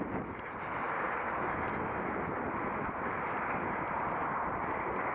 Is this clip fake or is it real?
real